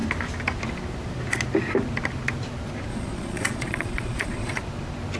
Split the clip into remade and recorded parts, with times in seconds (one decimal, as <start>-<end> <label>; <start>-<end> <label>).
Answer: 0.0-2.9 recorded; 2.9-4.6 remade; 4.6-5.2 recorded